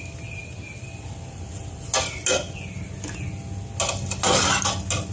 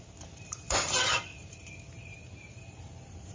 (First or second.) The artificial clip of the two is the second